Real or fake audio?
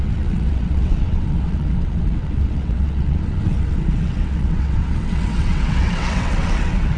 fake